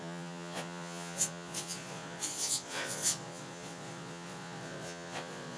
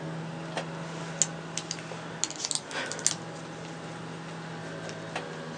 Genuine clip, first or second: second